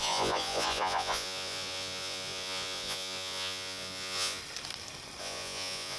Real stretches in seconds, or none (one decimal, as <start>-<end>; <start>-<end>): 4.4-5.2